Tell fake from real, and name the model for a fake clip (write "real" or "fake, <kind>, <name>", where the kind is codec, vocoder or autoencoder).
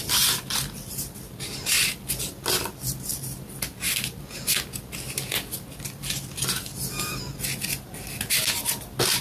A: real